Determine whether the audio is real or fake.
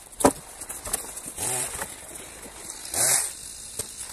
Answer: real